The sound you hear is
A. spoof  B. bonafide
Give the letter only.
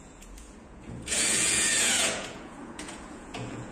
A